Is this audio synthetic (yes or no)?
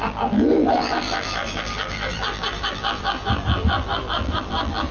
yes